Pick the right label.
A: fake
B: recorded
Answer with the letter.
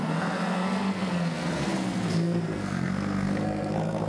A